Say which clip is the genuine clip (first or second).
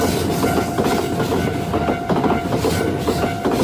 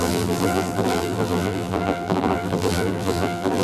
first